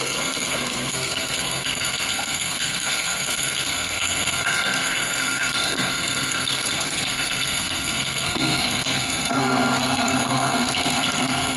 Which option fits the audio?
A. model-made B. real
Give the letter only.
A